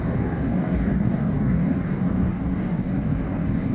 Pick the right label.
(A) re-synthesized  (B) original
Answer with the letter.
A